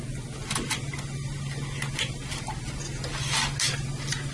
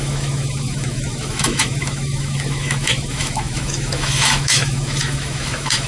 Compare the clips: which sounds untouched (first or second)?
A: first